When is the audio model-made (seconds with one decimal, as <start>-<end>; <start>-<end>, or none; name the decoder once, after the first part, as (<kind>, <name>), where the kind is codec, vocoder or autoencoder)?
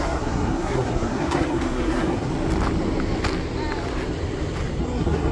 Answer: 0.0-2.3 (codec, SNAC); 4.8-5.3